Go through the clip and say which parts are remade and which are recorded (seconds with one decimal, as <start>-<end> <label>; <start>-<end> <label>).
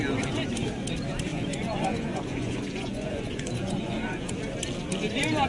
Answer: 0.0-1.3 recorded; 1.3-4.3 remade; 4.3-5.5 recorded